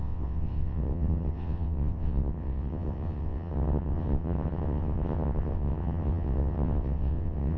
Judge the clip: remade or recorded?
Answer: remade